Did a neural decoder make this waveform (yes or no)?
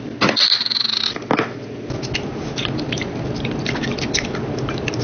no